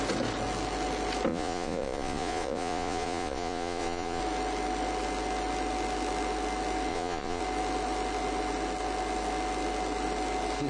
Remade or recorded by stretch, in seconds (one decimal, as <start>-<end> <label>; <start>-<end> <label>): 0.0-1.3 recorded; 1.3-4.2 remade; 4.2-6.9 recorded; 6.9-7.4 remade; 7.4-10.7 recorded

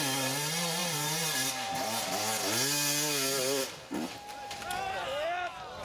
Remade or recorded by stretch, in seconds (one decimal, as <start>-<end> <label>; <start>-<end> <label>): 0.0-5.8 recorded